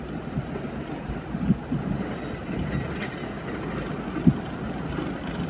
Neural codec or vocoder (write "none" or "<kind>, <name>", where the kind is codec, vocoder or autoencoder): none